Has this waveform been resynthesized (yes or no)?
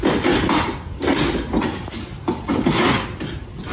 no